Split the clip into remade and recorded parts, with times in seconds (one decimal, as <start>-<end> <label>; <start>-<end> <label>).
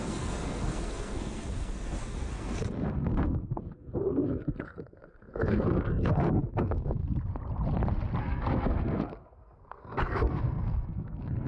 0.0-7.0 remade; 7.0-8.2 recorded; 8.2-11.5 remade